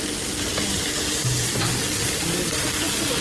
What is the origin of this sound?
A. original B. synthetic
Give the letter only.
A